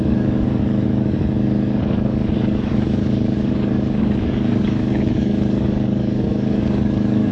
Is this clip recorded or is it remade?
remade